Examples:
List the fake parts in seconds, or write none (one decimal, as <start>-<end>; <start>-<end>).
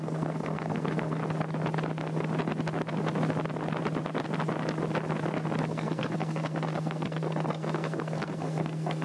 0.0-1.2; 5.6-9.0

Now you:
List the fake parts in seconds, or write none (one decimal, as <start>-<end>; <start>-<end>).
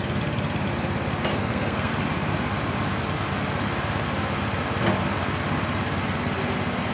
1.3-1.9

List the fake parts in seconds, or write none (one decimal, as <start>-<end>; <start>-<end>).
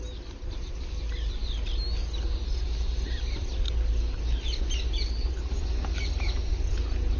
none